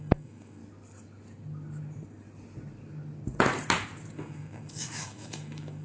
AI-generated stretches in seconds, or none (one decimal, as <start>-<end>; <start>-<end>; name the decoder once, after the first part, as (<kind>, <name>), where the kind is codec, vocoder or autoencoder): 0.0-0.6 (autoencoder, DAC-VAE); 4.1-5.8